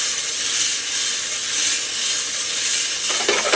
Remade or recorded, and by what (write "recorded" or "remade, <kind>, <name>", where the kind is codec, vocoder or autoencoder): recorded